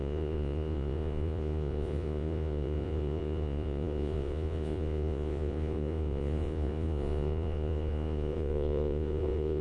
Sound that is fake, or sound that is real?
fake